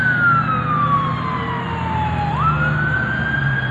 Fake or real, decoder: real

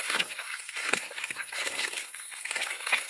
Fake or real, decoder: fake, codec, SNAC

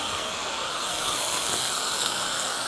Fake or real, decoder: fake, codec, SNAC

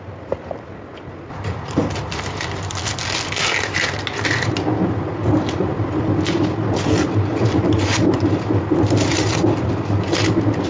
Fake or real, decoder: real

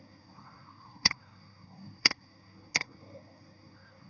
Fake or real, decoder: fake, codec, SNAC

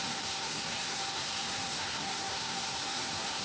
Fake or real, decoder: fake, codec, SNAC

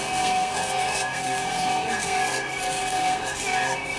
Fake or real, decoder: fake, codec, SNAC